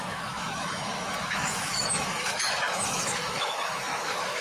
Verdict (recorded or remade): remade